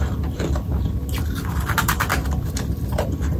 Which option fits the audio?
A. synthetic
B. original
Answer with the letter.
B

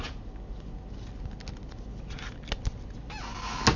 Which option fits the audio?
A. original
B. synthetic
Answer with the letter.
A